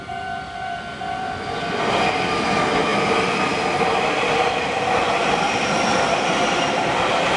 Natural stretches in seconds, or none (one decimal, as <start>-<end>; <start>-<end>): 0.0-7.4